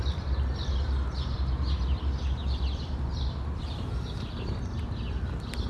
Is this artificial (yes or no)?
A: no